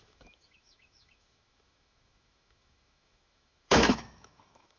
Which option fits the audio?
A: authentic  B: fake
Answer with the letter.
B